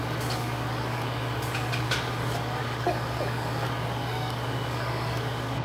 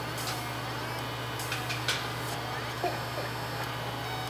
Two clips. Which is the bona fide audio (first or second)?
second